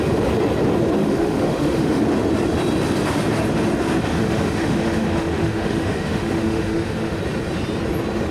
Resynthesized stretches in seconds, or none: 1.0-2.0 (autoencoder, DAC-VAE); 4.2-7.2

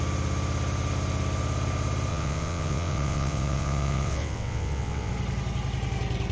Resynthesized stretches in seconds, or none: 2.1-5.1 (vocoder, WaveNeXt)

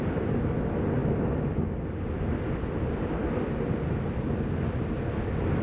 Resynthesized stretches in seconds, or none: none